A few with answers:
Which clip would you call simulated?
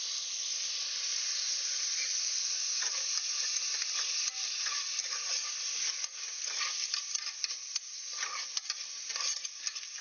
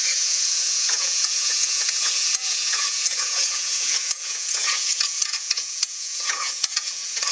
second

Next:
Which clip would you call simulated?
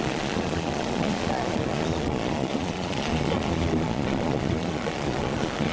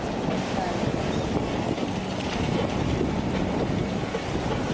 first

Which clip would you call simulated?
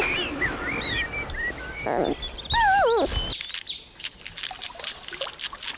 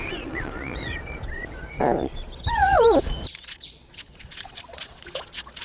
second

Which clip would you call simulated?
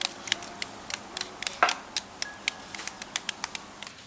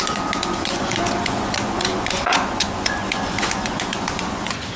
second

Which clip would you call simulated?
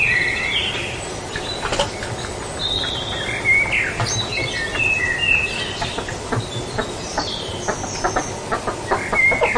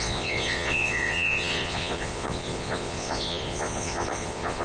second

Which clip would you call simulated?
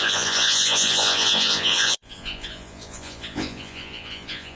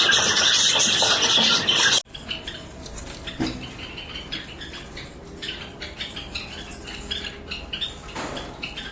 first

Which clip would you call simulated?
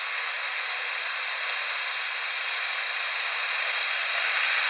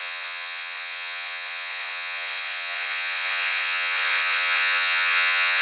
second